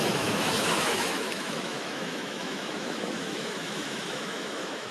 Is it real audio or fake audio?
fake